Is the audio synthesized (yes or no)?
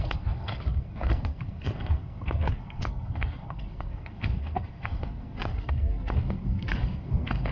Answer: yes